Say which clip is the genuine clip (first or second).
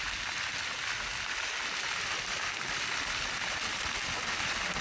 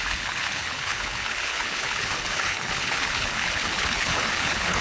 first